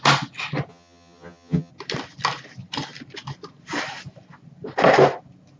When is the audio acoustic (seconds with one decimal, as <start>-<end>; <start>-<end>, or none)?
0.0-0.7; 1.7-5.6